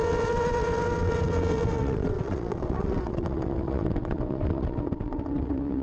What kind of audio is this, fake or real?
fake